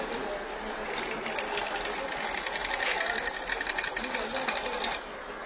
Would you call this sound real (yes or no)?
yes